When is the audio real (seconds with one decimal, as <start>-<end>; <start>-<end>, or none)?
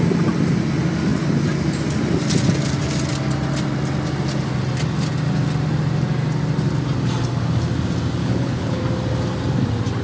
0.0-8.2; 8.8-10.0